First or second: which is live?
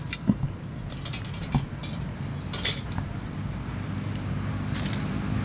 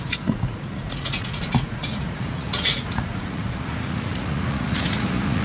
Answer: first